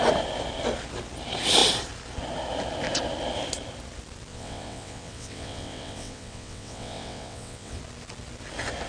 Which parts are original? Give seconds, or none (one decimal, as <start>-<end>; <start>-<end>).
0.0-4.3; 7.8-8.9